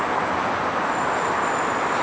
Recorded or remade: recorded